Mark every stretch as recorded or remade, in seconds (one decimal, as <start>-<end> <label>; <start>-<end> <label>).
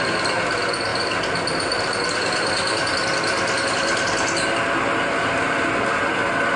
0.0-6.6 recorded